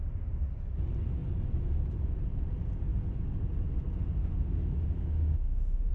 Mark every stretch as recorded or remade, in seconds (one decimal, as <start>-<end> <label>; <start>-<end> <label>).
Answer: 0.0-4.2 recorded; 4.2-5.9 remade